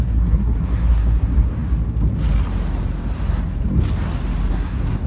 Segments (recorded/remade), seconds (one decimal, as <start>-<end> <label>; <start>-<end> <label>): 0.0-1.5 remade; 1.5-4.5 recorded; 4.5-5.1 remade